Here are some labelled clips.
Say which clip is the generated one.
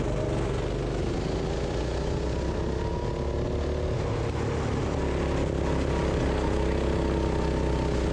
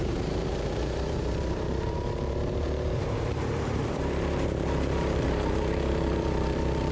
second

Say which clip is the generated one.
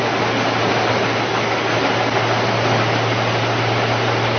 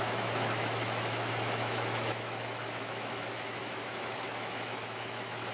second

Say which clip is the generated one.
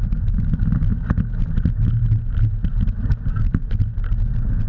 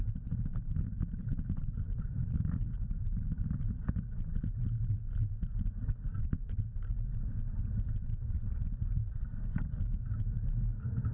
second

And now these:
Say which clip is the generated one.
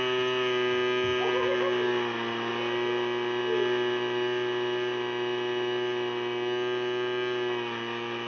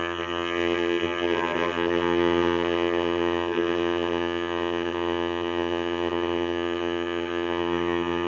second